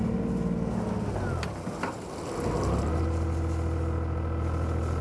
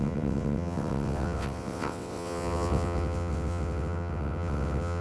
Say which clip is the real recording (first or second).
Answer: first